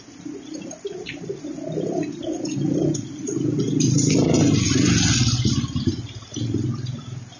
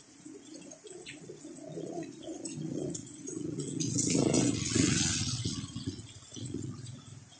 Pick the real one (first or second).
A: first